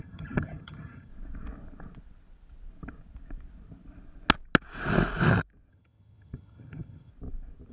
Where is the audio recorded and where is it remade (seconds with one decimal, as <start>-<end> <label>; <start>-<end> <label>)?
0.0-1.1 remade; 1.1-5.7 recorded; 5.7-7.1 remade; 7.1-7.7 recorded